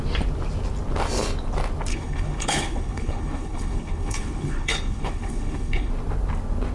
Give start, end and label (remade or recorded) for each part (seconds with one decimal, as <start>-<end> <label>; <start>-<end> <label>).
0.0-1.9 recorded; 1.9-5.9 remade; 5.9-6.7 recorded